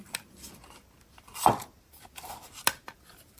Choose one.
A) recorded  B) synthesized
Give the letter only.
A